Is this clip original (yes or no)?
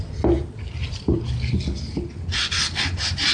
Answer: yes